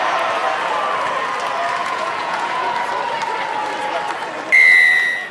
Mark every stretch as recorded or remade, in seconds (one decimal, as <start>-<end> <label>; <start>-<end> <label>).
0.0-1.8 recorded; 1.8-2.7 remade; 2.7-5.3 recorded